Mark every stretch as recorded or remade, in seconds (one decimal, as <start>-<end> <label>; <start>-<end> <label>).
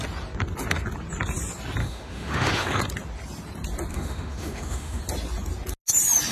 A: 0.0-1.8 recorded; 1.8-2.8 remade; 2.8-3.9 recorded; 3.9-5.0 remade; 5.0-6.3 recorded